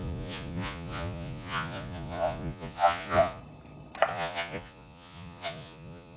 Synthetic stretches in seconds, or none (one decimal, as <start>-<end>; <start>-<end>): 0.0-3.4; 4.1-6.2